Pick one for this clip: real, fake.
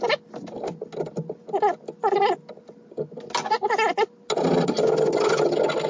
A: real